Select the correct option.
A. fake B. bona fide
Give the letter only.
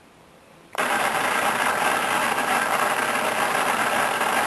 A